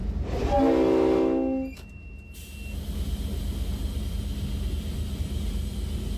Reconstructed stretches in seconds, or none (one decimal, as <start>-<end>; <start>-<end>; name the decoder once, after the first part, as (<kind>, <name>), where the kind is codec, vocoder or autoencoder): none